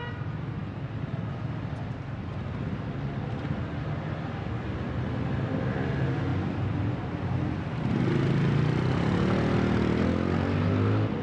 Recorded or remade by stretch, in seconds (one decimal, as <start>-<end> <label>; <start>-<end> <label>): 0.0-11.2 recorded